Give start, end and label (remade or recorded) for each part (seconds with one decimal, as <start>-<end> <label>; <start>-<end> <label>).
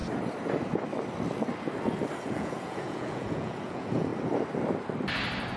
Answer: 0.0-2.2 recorded; 2.2-4.1 remade; 4.1-5.6 recorded